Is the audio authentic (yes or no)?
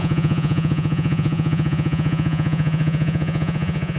no